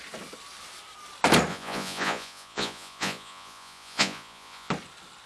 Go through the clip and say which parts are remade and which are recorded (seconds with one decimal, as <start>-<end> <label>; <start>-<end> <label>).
0.0-1.5 recorded; 1.5-4.7 remade; 4.7-5.3 recorded